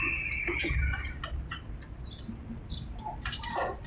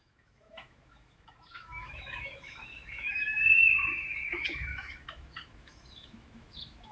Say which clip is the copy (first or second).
second